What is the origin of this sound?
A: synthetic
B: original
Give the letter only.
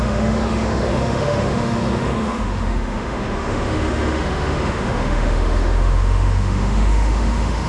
A